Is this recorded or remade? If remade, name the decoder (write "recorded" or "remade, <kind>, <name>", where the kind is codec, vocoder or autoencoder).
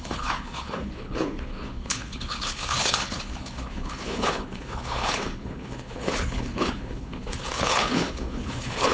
remade, codec, HILCodec